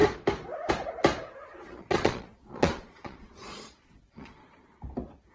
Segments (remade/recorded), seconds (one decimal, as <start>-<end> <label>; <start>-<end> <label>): 0.0-1.5 recorded; 1.5-4.7 remade; 4.7-5.3 recorded